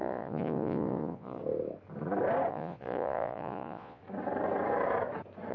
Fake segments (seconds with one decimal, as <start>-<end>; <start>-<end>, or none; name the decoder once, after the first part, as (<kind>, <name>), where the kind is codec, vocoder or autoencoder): 0.0-1.4 (vocoder, Vocos); 2.5-4.0